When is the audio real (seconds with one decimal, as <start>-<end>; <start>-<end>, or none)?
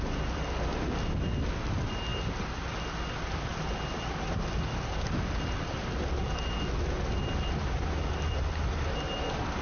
0.0-9.6